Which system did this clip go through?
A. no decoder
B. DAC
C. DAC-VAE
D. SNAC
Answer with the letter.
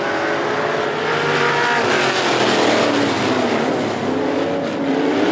A